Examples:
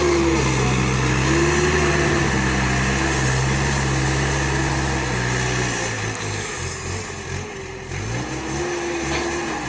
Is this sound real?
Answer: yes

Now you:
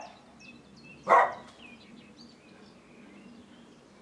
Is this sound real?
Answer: yes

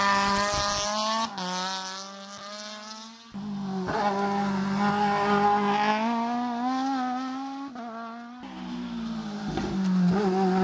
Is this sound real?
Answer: yes